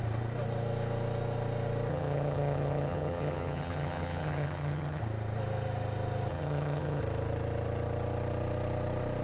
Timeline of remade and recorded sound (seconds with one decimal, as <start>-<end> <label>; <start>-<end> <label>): 0.0-1.9 recorded; 1.9-5.0 remade; 5.0-6.3 recorded; 6.3-7.0 remade; 7.0-9.2 recorded